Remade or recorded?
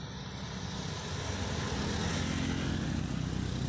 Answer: recorded